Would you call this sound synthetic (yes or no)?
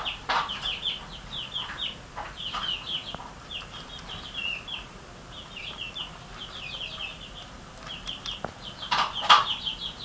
no